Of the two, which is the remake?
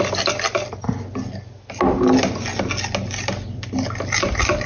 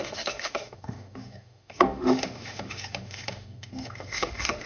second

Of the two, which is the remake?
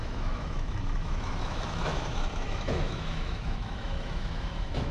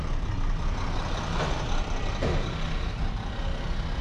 first